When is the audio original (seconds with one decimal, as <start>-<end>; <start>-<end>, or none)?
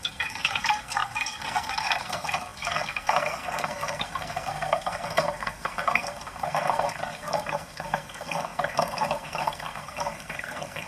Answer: none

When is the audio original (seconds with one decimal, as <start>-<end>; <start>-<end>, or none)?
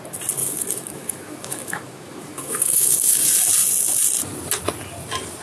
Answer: 0.0-0.4; 3.2-5.4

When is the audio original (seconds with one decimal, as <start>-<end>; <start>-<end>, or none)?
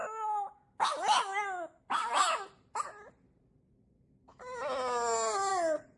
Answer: 0.0-6.0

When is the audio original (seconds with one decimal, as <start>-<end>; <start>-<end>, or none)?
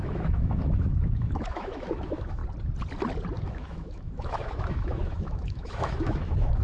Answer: 2.4-3.4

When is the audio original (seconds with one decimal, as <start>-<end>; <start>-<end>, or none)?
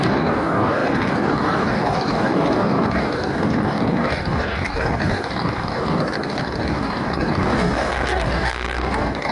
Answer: none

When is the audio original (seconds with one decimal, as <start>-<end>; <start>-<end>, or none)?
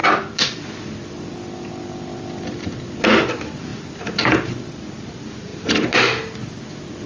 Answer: 0.0-7.1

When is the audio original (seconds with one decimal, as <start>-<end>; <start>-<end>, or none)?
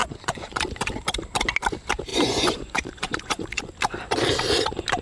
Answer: 0.6-2.1; 3.6-5.0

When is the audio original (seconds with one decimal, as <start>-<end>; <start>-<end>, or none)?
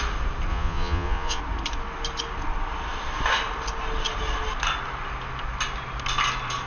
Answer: 0.0-0.5; 1.4-6.7